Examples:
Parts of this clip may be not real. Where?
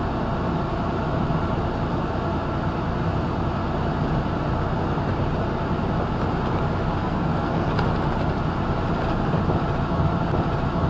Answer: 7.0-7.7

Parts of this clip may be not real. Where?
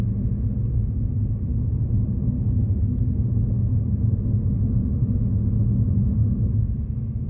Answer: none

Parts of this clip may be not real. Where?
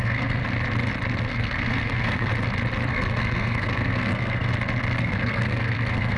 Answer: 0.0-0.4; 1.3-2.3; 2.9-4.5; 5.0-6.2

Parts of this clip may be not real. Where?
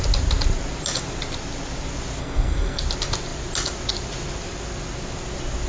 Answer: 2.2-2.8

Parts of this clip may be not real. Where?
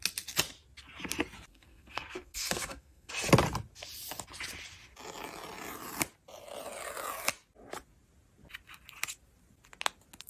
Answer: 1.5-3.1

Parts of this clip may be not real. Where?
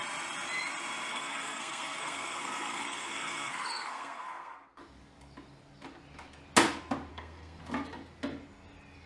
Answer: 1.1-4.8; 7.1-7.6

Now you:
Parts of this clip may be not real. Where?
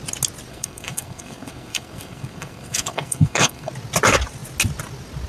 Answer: 0.5-3.7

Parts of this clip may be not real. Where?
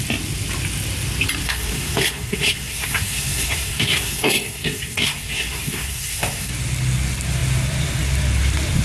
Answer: 1.4-6.5